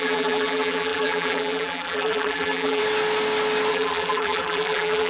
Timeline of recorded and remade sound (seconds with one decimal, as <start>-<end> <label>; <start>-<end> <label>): 0.0-2.8 remade; 2.8-3.7 recorded; 3.7-5.1 remade